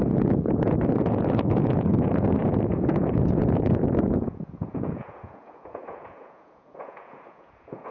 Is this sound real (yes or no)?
no